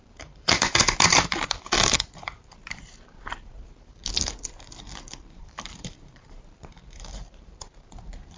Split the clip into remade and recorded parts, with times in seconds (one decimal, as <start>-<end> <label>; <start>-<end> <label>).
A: 0.0-4.0 remade; 4.0-5.4 recorded; 5.4-8.4 remade